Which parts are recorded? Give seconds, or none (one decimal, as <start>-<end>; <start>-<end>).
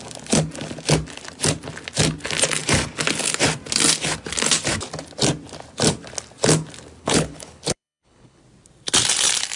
0.0-7.0; 8.4-9.6